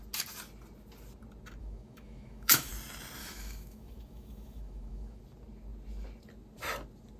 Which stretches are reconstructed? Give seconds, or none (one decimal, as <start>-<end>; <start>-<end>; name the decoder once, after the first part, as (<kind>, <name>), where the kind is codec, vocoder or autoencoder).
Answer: 1.6-2.7 (autoencoder, DAC-VAE); 3.2-5.2